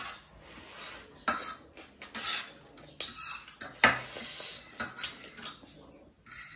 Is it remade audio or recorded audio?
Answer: recorded